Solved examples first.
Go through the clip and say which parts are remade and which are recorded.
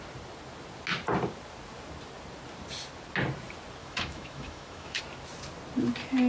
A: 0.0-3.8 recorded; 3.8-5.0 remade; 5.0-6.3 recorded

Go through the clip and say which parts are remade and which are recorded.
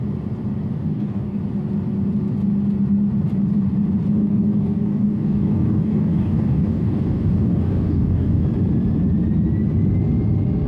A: 0.0-0.7 recorded; 0.7-1.4 remade; 1.4-4.1 recorded; 4.1-8.4 remade; 8.4-10.7 recorded